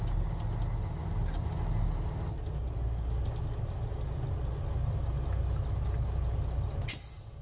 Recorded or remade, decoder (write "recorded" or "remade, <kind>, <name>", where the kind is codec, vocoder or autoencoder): recorded